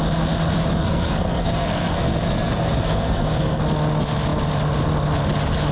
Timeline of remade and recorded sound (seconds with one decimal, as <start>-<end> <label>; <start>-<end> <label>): 0.0-0.7 recorded; 0.7-3.6 remade; 3.6-5.7 recorded